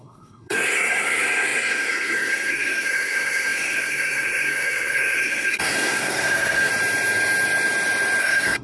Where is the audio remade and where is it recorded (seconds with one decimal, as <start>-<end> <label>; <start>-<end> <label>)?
0.0-6.7 remade; 6.7-8.2 recorded; 8.2-8.6 remade